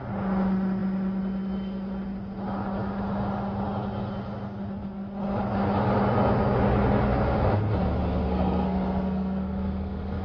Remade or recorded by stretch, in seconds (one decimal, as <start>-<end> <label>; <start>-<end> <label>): 0.0-8.3 recorded; 8.3-10.2 remade